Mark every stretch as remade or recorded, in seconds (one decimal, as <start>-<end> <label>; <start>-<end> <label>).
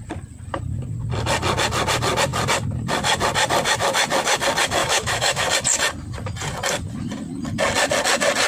0.0-4.8 recorded; 4.8-5.5 remade; 5.5-8.5 recorded